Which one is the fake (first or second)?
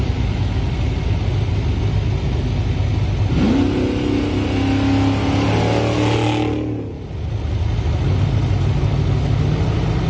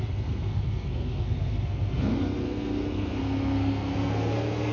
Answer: second